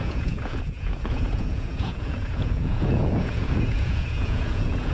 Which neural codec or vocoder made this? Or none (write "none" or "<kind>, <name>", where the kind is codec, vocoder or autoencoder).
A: vocoder, Vocos